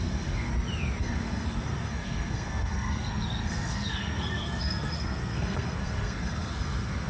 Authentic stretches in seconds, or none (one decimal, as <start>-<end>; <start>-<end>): 0.5-1.0